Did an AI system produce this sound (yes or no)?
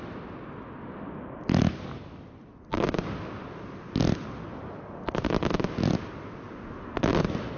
no